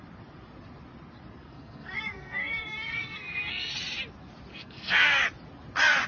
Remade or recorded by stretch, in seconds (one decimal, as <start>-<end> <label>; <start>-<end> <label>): 0.0-1.4 recorded; 1.4-3.7 remade; 3.7-4.5 recorded; 4.5-5.2 remade; 5.2-6.1 recorded